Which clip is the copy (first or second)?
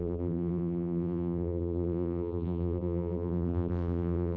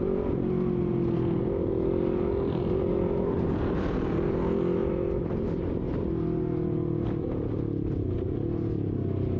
first